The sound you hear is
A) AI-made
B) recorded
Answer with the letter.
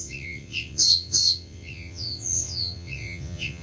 A